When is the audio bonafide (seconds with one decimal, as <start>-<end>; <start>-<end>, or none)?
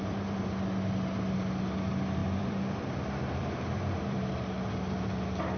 0.0-2.2; 4.3-5.6